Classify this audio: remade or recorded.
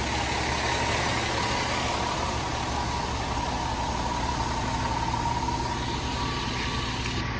recorded